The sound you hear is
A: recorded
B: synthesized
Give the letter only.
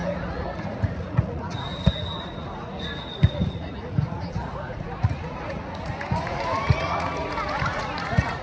B